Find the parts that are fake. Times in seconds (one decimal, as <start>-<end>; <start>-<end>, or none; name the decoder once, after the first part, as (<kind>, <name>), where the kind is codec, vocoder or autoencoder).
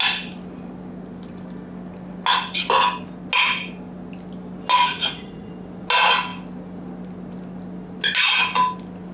4.8-5.5 (vocoder, Vocos)